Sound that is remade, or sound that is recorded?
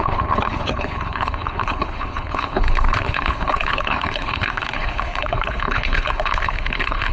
remade